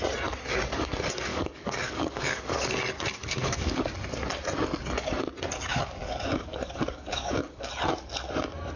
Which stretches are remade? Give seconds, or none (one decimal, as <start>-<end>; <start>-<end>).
1.3-2.7; 3.2-3.9; 5.7-7.7